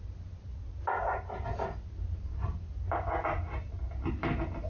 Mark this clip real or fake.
real